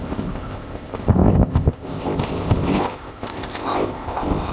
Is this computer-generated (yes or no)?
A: yes